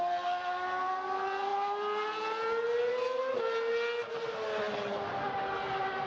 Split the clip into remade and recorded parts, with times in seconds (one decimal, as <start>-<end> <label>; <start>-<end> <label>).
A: 0.0-6.1 recorded